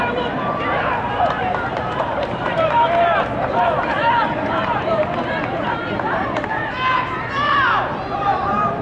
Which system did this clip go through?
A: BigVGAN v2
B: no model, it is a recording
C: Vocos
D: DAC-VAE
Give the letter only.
A